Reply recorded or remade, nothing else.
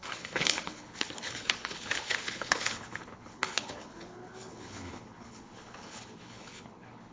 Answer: remade